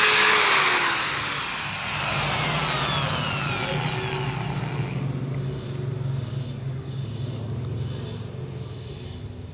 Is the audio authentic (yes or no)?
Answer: yes